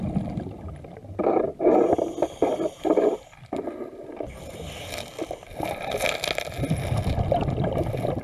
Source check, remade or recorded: recorded